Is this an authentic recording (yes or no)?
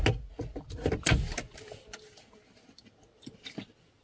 yes